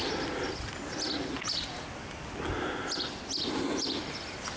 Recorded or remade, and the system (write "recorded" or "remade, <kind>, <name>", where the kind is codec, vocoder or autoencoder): recorded